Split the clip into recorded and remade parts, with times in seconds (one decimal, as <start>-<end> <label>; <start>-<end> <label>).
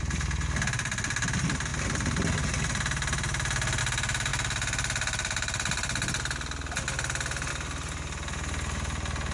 0.0-9.3 recorded